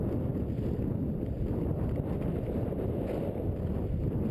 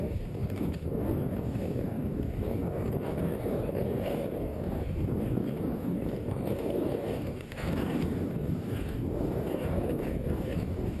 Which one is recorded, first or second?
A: first